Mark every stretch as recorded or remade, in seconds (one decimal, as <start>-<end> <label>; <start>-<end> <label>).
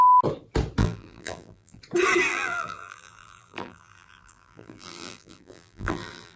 0.0-0.8 recorded; 0.8-1.8 remade; 1.8-2.3 recorded; 2.3-6.4 remade